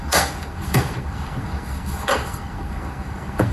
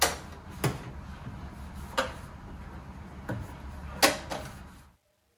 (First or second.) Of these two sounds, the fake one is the first